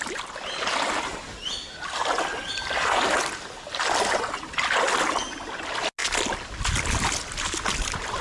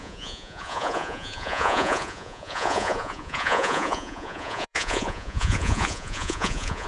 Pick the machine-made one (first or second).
second